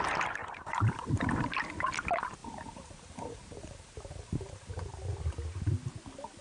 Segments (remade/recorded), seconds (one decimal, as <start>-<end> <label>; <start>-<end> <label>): 0.0-0.4 recorded; 0.4-1.5 remade; 1.5-2.4 recorded; 2.4-4.7 remade; 4.7-6.4 recorded